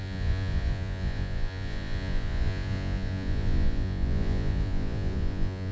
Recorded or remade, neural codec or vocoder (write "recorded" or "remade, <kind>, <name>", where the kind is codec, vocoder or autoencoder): remade, vocoder, Vocos